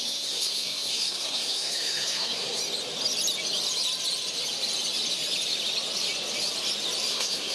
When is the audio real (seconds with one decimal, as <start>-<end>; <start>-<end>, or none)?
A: 2.6-7.1